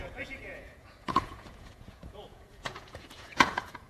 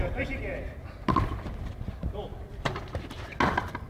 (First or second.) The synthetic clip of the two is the first